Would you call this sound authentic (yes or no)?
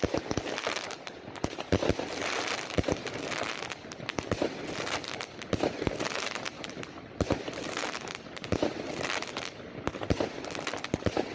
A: yes